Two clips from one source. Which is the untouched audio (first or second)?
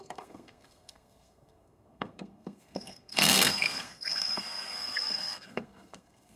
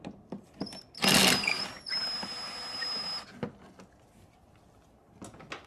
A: second